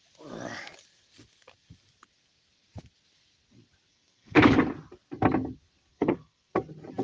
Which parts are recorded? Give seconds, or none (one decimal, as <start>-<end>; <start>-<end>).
0.0-3.9; 4.5-5.9; 6.5-7.0